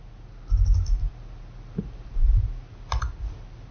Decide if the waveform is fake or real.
real